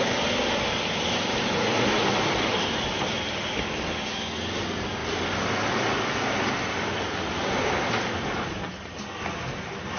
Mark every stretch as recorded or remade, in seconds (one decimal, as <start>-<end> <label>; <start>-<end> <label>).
0.0-10.0 recorded